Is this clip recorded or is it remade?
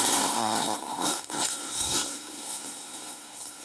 remade